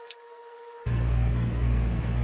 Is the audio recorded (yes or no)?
no